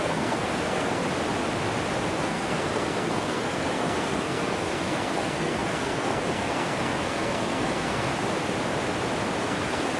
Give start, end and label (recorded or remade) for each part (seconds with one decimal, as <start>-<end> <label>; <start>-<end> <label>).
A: 0.0-1.0 remade; 1.0-2.1 recorded; 2.1-8.1 remade; 8.1-9.4 recorded; 9.4-10.0 remade